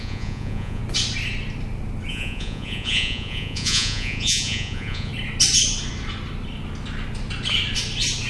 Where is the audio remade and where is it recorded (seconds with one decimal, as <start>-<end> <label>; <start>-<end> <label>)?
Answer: 0.0-0.8 remade; 0.8-2.1 recorded; 2.1-5.1 remade; 5.1-8.3 recorded